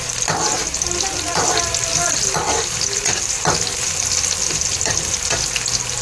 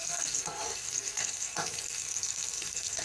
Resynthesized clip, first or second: second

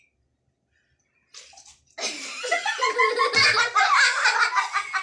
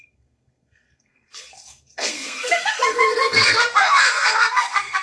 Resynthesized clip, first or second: second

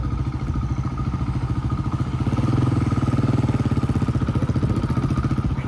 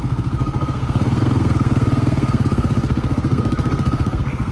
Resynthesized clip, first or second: second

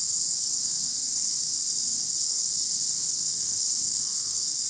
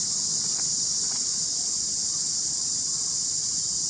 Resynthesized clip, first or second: first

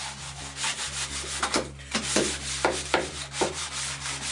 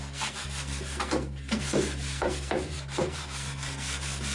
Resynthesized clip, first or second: second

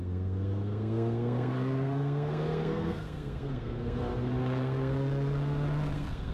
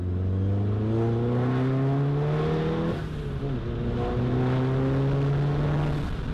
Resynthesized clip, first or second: first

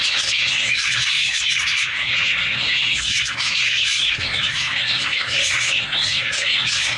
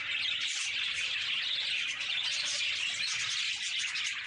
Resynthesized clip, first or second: first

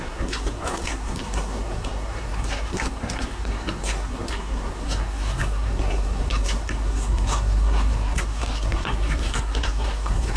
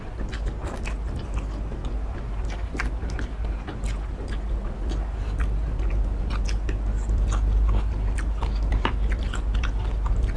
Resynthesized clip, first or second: first